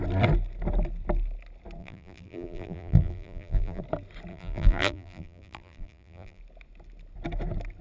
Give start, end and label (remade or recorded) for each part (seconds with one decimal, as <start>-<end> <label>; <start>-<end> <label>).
0.0-1.8 recorded; 1.8-3.8 remade; 3.8-4.3 recorded; 4.3-6.4 remade; 6.4-7.8 recorded